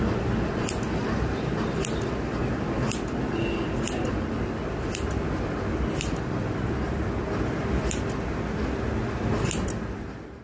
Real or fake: real